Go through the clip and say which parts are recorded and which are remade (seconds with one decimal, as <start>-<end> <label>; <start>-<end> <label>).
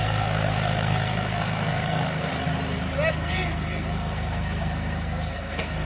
0.0-2.3 remade; 2.3-3.1 recorded; 3.1-5.8 remade